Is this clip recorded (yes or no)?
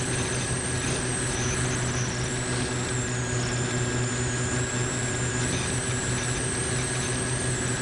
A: yes